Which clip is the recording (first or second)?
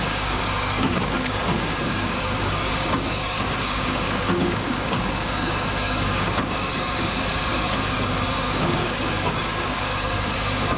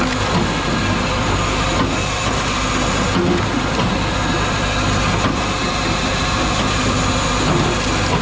second